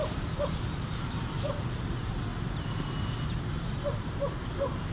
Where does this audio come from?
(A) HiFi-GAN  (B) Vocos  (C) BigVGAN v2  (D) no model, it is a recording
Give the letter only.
D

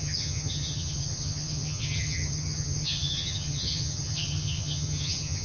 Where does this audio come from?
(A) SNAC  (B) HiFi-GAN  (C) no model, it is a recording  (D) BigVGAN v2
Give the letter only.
B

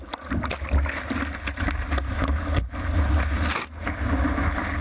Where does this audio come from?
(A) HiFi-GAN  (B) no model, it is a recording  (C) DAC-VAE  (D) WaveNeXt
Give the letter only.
B